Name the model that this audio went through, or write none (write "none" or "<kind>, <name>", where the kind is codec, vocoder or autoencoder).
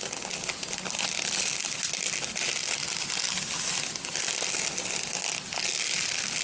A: none